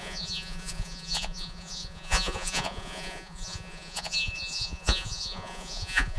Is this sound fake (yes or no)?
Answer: yes